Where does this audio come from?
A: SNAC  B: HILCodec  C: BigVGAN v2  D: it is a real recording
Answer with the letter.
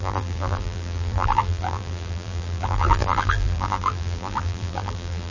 C